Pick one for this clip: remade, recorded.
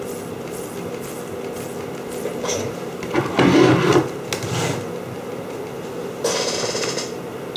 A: recorded